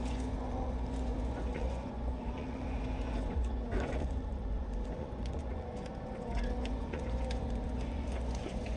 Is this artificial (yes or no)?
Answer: yes